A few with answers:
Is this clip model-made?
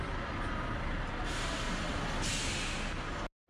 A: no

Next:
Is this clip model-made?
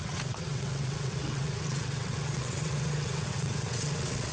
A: yes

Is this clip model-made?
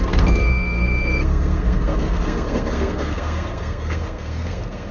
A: yes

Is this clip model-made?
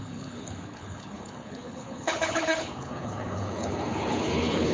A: yes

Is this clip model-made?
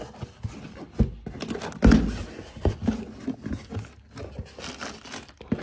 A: no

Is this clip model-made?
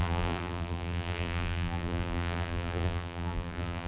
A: yes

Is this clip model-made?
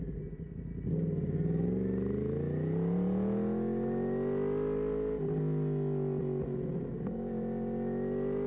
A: no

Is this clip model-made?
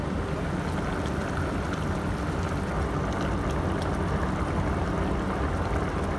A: no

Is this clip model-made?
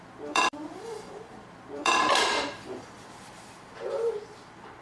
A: yes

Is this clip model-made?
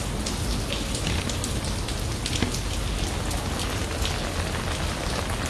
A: no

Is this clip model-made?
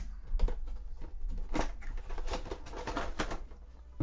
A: no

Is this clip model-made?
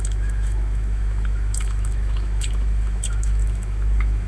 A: yes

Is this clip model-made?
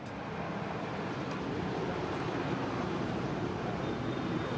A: yes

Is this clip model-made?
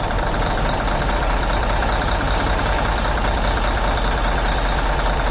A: no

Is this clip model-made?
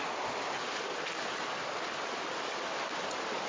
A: no